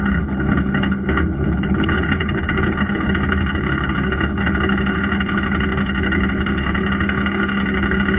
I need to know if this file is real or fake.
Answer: fake